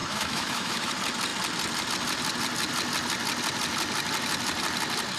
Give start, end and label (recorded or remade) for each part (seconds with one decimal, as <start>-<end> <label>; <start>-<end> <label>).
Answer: 0.0-0.9 remade; 0.9-5.2 recorded